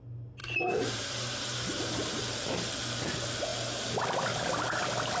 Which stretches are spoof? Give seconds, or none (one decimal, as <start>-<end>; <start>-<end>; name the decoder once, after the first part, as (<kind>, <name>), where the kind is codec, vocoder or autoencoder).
0.4-2.2 (vocoder, BigVGAN v2)

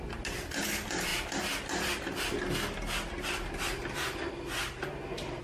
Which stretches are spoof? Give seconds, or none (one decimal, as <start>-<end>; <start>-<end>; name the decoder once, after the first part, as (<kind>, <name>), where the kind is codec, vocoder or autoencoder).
none

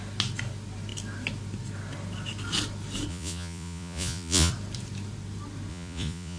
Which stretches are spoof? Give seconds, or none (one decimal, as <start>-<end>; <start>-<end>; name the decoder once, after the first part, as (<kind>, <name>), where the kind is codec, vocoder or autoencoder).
3.1-4.5 (vocoder, Vocos); 5.7-6.4

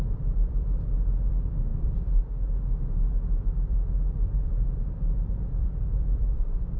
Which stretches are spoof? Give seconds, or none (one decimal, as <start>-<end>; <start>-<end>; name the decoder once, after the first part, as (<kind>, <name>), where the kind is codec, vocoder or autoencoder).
0.0-6.8 (vocoder, BigVGAN v2)

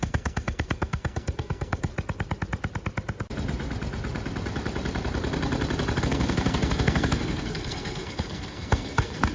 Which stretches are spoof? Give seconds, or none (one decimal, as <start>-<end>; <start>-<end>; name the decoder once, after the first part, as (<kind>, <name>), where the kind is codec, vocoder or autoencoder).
0.0-1.9 (codec, SNAC); 6.0-9.3

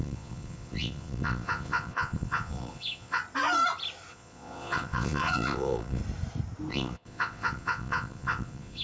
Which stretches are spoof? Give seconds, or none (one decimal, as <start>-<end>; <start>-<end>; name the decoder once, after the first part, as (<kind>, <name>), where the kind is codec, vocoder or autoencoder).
0.0-3.2 (vocoder, Vocos); 4.1-6.0; 6.7-8.8

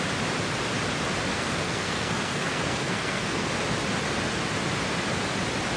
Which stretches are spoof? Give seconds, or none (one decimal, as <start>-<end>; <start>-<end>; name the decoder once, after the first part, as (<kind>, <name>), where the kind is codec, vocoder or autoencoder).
1.3-3.5 (codec, SNAC)

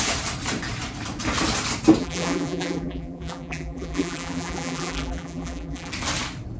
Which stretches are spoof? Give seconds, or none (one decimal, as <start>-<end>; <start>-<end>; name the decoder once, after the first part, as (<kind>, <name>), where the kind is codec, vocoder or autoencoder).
2.0-5.9 (vocoder, BigVGAN v2)